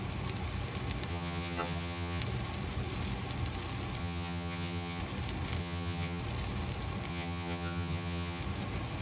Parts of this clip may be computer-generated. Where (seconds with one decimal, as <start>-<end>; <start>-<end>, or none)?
1.1-2.2; 4.0-5.0; 5.6-6.2; 7.1-8.4